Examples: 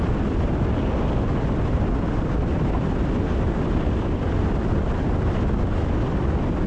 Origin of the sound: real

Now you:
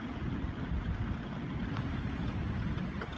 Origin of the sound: real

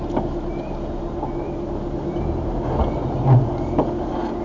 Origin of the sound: real